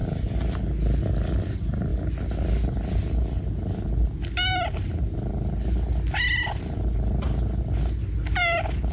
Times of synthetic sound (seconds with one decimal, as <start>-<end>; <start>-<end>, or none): none